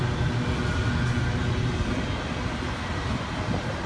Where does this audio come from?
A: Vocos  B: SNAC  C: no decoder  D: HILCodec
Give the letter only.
C